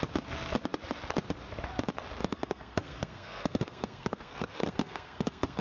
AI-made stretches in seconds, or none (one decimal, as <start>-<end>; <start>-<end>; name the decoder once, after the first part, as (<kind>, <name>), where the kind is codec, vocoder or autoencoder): 2.2-5.6 (codec, SNAC)